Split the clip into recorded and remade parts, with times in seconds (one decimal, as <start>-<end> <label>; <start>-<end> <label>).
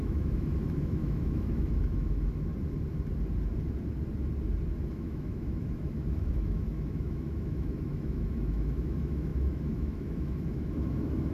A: 0.0-2.5 remade; 2.5-4.9 recorded; 4.9-11.3 remade